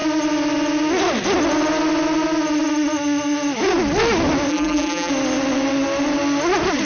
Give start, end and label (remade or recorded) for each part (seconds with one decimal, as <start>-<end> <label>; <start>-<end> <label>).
0.0-4.5 recorded; 4.5-5.1 remade; 5.1-6.9 recorded